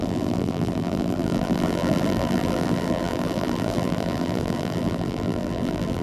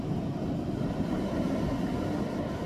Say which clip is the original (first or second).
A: second